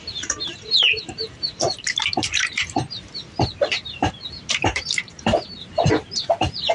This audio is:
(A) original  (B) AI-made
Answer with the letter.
B